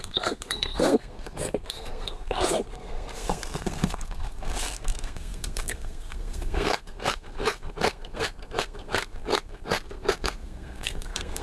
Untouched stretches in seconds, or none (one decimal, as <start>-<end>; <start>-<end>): none